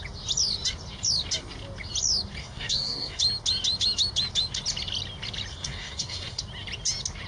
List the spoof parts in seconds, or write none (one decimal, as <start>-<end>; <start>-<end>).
2.4-3.2; 5.5-6.4